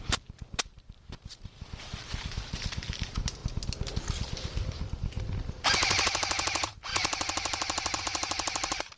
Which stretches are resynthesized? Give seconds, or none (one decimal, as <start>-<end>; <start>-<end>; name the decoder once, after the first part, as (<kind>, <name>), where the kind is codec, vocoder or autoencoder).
0.0-3.4 (vocoder, BigVGAN v2); 5.6-9.0